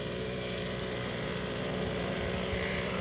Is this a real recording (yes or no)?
no